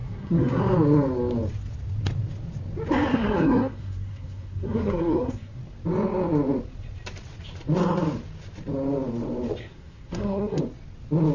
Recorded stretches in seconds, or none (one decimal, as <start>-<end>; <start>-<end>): 0.6-3.1; 5.6-9.6; 10.6-11.3